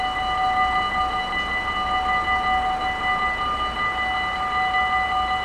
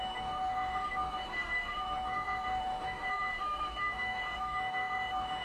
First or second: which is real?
first